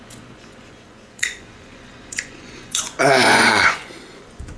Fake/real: fake